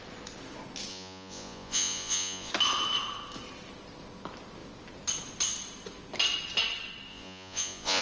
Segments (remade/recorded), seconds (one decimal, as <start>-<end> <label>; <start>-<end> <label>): 0.0-0.9 recorded; 0.9-2.5 remade; 2.5-7.1 recorded; 7.1-8.0 remade